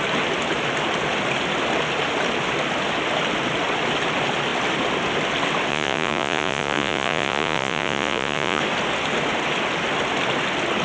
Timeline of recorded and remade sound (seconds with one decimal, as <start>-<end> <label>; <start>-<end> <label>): 0.0-5.7 recorded; 5.7-8.6 remade; 8.6-10.8 recorded